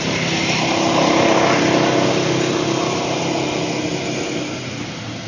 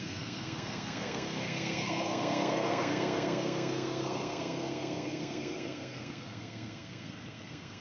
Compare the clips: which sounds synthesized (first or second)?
second